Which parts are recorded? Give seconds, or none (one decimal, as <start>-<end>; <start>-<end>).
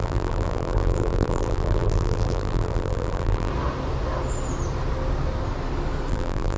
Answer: 3.5-6.1